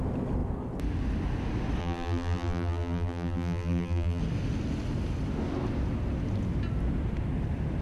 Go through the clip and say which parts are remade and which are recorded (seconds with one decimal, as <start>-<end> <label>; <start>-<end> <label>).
0.0-1.8 recorded; 1.8-4.2 remade; 4.2-7.8 recorded